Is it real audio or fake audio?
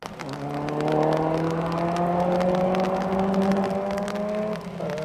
real